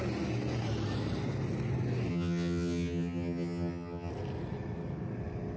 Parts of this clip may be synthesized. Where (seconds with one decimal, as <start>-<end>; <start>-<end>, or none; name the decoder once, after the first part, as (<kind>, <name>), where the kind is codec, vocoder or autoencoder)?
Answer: 2.1-4.1 (vocoder, HiFi-GAN)